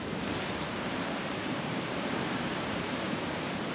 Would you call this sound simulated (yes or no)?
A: yes